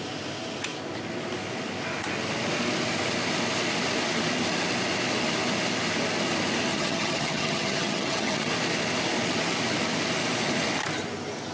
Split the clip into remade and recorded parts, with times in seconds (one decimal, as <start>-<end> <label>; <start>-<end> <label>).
0.0-6.7 recorded; 6.7-8.5 remade; 8.5-11.5 recorded